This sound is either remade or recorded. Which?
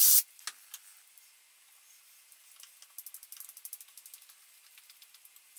recorded